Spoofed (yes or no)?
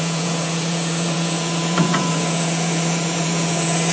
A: yes